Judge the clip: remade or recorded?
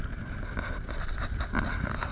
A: recorded